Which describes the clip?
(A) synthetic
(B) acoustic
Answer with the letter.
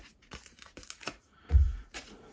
A